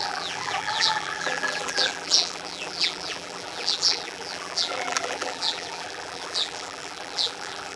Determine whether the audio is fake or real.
fake